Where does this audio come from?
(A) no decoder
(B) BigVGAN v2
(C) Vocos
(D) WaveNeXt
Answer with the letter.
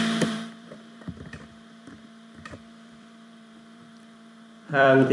B